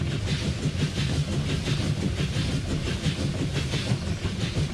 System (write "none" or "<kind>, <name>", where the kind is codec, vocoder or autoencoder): none